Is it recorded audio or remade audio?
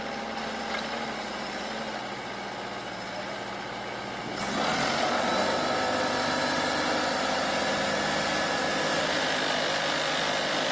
recorded